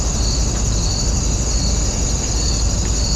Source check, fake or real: real